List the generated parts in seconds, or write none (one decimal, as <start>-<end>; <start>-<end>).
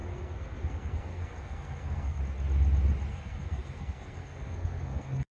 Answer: 0.0-2.2; 3.1-5.3